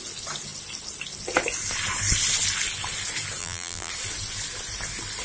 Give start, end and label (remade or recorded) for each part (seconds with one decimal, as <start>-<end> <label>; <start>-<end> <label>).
0.0-3.4 recorded; 3.4-3.9 remade; 3.9-5.2 recorded